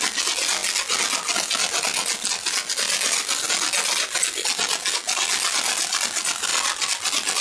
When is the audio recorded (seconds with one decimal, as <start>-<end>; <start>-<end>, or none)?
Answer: 0.0-7.4

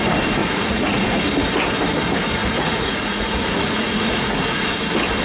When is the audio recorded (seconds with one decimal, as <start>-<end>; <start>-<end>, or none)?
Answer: 0.0-0.4; 1.2-2.4; 4.8-5.2

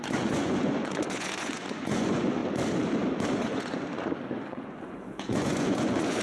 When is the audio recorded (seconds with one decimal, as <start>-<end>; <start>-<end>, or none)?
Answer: 2.4-3.4

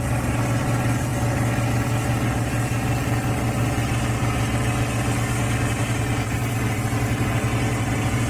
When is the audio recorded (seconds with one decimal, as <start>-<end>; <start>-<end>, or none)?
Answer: 0.0-8.3